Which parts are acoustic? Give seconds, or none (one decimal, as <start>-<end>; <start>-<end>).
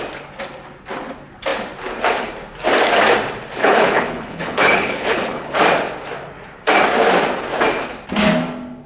0.0-3.6; 5.6-8.9